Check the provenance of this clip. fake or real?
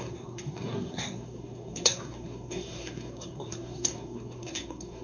fake